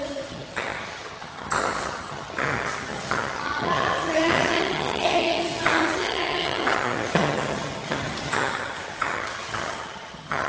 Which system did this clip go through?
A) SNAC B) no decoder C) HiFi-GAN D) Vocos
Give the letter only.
C